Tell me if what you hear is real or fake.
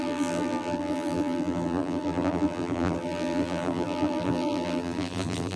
fake